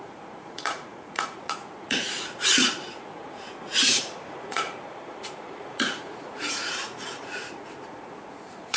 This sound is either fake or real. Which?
fake